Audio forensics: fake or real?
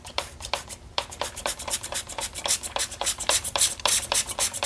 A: fake